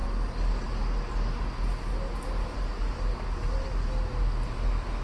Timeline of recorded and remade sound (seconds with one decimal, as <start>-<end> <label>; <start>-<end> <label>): 0.0-5.0 recorded